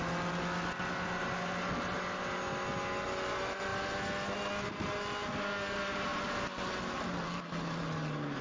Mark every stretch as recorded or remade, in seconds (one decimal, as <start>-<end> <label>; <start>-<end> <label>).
0.0-8.4 recorded